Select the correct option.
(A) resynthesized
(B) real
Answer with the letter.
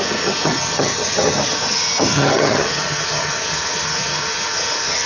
A